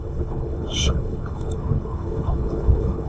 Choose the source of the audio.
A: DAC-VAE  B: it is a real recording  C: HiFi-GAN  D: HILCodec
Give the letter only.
D